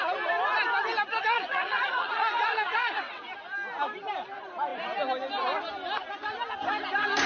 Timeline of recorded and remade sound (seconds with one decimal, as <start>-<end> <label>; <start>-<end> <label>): 0.0-1.2 recorded; 1.2-3.2 remade; 3.2-7.3 recorded